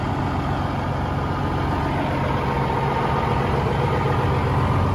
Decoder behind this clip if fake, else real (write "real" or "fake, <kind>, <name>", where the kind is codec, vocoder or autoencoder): real